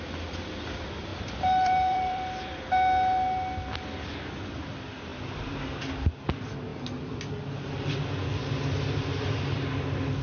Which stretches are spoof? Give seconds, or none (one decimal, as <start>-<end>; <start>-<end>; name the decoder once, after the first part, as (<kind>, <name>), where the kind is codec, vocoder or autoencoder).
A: 1.1-2.6 (vocoder, BigVGAN v2); 5.1-5.6